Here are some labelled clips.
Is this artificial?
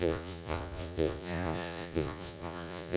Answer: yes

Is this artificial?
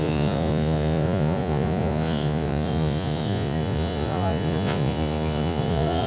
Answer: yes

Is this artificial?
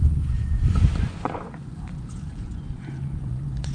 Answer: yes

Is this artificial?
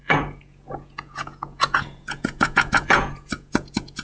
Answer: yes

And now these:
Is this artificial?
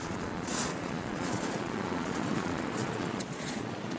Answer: yes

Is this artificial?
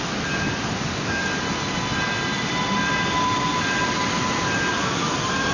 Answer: no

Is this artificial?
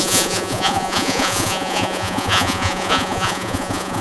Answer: yes